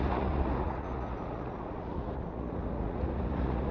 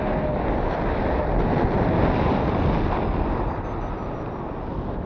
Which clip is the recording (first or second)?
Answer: second